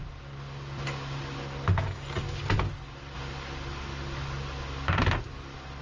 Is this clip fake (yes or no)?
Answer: no